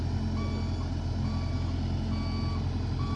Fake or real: real